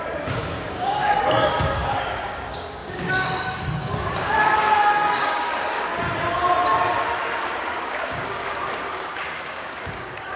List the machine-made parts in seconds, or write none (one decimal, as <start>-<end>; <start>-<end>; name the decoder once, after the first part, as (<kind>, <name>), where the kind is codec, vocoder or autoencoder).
0.0-5.9 (codec, DAC); 7.4-10.4